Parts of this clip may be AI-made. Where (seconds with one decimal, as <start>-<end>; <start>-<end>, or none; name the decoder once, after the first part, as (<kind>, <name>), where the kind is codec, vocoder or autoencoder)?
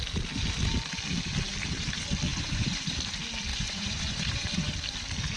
2.3-2.8 (vocoder, Vocos); 3.5-4.7